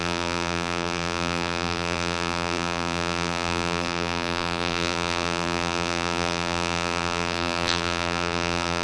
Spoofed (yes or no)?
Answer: yes